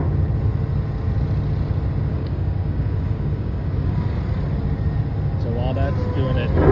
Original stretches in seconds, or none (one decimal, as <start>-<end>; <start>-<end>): 0.0-2.1; 4.2-6.7